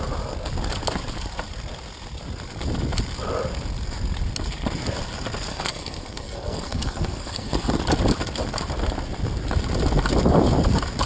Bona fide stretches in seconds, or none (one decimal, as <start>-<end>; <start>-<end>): 0.0-5.5; 7.8-11.1